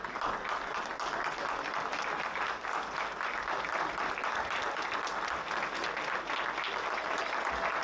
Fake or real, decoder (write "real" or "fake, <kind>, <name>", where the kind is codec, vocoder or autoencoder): real